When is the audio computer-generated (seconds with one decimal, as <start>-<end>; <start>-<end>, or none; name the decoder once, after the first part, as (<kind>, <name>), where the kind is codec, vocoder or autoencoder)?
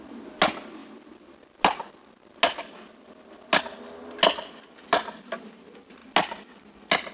none